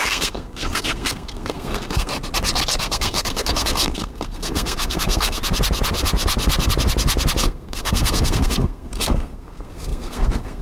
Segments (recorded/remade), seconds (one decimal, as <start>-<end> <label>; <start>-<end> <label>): 0.0-2.1 remade; 2.1-2.8 recorded; 2.8-5.4 remade; 5.4-7.4 recorded; 7.4-10.6 remade